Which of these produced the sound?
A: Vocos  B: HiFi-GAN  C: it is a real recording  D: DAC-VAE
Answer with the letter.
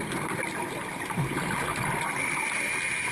C